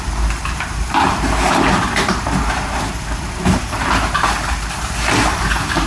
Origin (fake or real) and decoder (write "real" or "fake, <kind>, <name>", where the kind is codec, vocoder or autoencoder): fake, vocoder, BigVGAN v2